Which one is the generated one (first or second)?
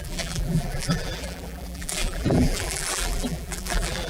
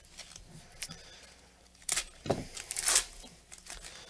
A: first